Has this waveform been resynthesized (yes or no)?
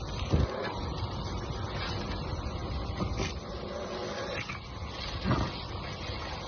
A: no